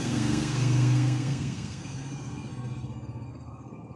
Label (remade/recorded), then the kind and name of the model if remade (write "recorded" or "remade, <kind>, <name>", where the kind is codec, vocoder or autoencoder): remade, codec, SNAC